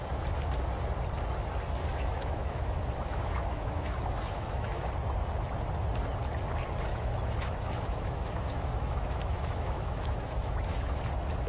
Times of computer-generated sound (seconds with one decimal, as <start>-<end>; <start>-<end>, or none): 1.8-4.8; 6.9-11.0